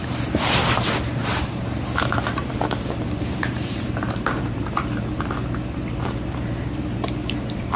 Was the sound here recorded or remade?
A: remade